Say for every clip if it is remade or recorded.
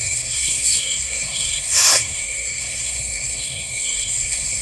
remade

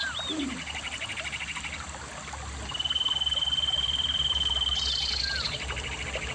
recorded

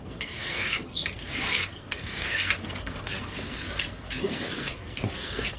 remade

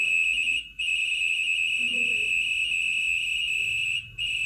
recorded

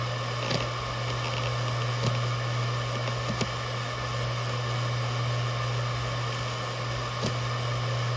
recorded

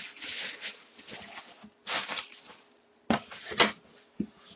recorded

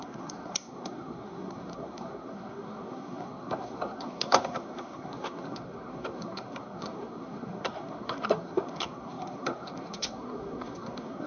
remade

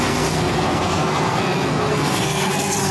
remade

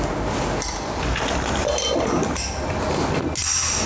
recorded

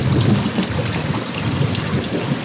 recorded